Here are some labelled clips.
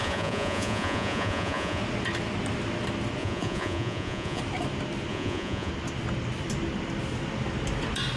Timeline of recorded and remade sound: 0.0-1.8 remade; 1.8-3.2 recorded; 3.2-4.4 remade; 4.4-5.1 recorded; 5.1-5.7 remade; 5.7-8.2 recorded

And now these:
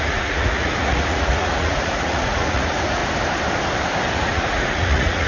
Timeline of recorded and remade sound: 0.0-3.0 remade; 3.0-4.1 recorded; 4.1-5.3 remade

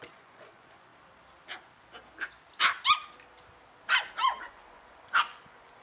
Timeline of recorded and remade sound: 0.0-0.9 remade; 0.9-4.4 recorded; 4.4-5.8 remade

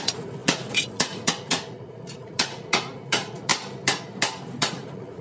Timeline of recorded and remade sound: 0.0-3.5 remade; 3.5-4.6 recorded; 4.6-5.2 remade

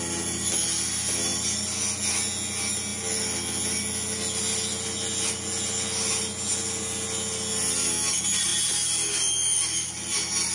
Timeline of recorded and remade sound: 0.0-10.5 recorded

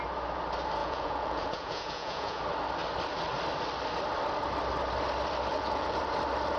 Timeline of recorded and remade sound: 0.0-0.8 recorded; 0.8-2.4 remade; 2.4-5.5 recorded; 5.5-6.0 remade; 6.0-6.6 recorded